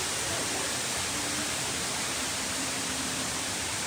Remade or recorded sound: remade